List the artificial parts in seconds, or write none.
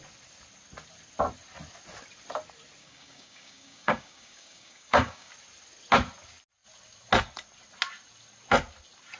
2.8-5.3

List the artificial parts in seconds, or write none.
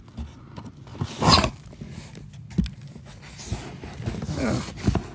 none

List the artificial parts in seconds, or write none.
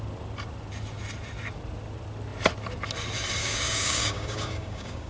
3.4-5.1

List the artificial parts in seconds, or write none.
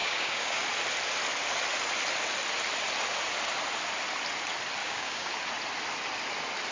0.0-0.6; 4.8-5.3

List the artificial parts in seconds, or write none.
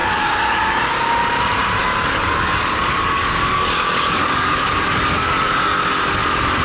0.0-0.9; 1.8-5.8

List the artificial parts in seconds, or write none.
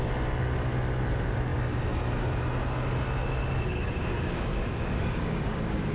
3.7-5.9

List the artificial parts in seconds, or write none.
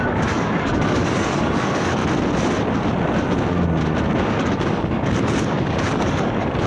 0.0-2.0; 4.3-6.7